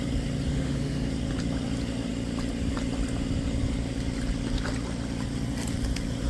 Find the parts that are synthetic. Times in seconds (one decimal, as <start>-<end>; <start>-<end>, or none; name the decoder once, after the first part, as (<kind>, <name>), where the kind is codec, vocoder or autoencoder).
0.5-1.1 (autoencoder, DAC-VAE)

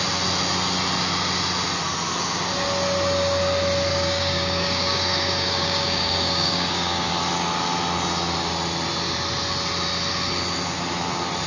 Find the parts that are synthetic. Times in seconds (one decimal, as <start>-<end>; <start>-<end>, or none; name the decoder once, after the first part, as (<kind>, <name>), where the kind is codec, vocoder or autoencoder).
3.9-7.1 (codec, DAC)

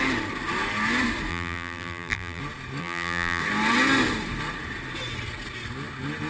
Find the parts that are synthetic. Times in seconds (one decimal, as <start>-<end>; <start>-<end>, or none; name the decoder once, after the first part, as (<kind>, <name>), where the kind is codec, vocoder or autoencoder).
1.3-2.4 (vocoder, BigVGAN v2); 2.8-3.4

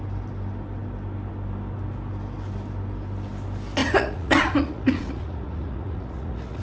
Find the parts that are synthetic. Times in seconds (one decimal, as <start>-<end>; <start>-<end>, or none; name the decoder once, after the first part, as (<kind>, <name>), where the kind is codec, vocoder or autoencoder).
3.8-6.6 (vocoder, Vocos)

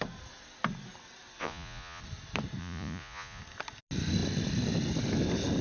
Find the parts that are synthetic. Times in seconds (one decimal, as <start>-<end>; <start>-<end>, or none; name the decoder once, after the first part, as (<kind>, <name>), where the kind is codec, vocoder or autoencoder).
1.4-2.0 (vocoder, Vocos); 2.6-3.4